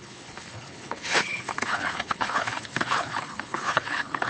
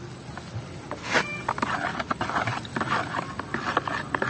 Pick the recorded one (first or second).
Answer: second